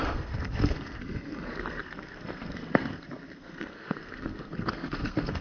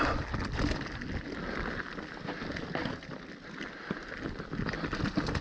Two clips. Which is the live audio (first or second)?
second